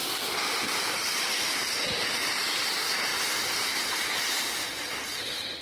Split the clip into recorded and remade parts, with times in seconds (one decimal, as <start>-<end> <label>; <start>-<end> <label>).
0.0-5.6 recorded